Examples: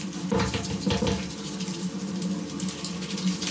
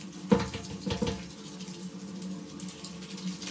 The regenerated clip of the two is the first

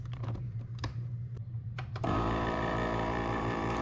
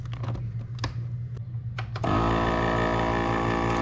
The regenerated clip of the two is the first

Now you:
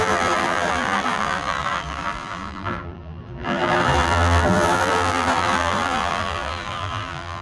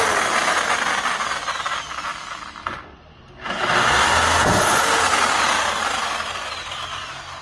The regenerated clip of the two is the first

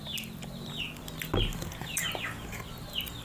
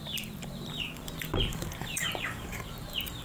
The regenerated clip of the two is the second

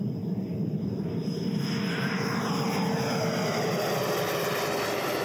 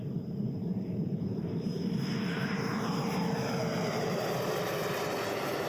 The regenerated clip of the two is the second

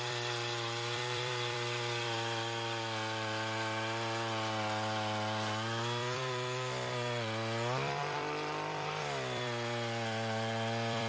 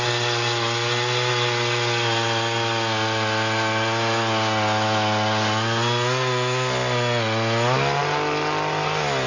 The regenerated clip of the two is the first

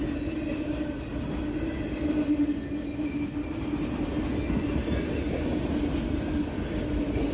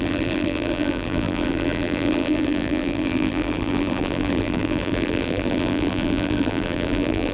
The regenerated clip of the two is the second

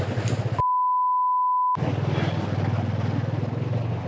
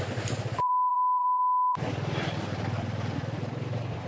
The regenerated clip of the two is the second